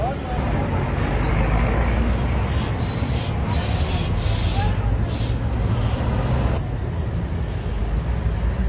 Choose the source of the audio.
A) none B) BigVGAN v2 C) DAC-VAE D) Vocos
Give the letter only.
A